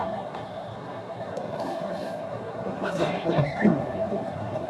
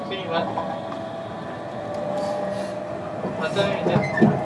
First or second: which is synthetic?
first